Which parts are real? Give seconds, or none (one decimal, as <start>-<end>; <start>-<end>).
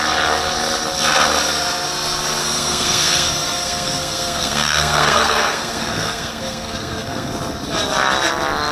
0.0-2.4; 7.3-8.7